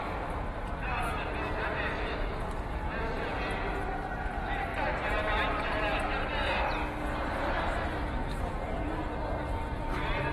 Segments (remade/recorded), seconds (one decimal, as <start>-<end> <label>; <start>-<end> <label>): 0.0-10.3 recorded